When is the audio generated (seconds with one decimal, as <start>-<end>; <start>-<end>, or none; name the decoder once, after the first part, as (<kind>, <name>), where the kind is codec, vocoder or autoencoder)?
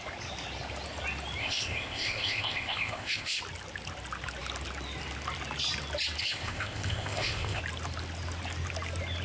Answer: 1.4-3.4 (codec, ZipCodec); 6.2-7.6